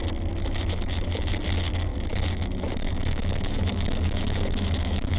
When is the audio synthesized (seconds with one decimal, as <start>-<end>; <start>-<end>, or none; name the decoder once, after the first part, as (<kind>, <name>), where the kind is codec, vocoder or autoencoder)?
0.4-1.3 (autoencoder, DAC-VAE); 1.9-5.2